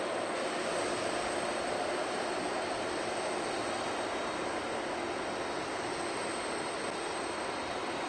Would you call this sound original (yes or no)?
yes